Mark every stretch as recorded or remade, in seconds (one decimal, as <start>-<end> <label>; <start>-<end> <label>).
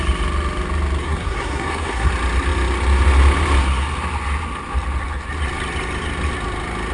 0.0-1.0 recorded; 1.0-2.1 remade; 2.1-6.9 recorded